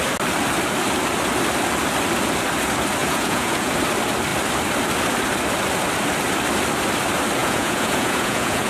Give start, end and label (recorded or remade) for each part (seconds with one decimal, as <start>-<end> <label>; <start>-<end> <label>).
0.0-3.0 recorded; 3.0-3.7 remade; 3.7-7.4 recorded; 7.4-8.7 remade